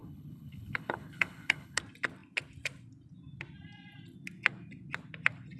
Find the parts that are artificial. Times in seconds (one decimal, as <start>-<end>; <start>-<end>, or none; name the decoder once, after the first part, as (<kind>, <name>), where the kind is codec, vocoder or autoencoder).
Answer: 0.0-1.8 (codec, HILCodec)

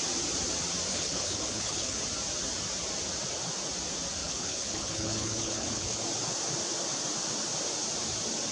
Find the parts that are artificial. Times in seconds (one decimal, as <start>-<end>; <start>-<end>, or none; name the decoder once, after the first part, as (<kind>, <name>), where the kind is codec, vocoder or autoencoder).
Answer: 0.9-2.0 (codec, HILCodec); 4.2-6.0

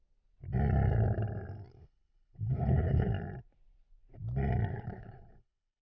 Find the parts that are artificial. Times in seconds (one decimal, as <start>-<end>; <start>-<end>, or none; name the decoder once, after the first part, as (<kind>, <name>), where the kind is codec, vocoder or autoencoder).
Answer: 1.7-3.1 (codec, HILCodec); 4.7-5.8

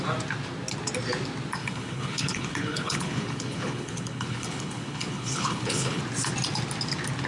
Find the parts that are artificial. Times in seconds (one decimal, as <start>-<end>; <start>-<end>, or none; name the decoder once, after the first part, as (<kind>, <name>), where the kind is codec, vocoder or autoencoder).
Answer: 1.6-6.0 (codec, HILCodec)